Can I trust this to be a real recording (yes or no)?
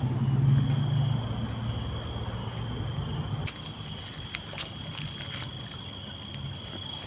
yes